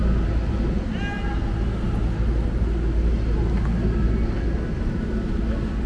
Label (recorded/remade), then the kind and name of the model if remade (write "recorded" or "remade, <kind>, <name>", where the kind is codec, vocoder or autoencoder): recorded